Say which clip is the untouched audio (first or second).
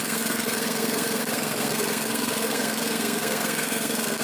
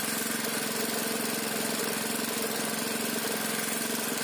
second